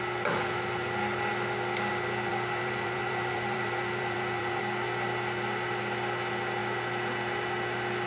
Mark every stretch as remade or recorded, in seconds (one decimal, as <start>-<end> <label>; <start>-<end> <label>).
0.0-2.3 recorded; 2.3-4.6 remade; 4.6-8.1 recorded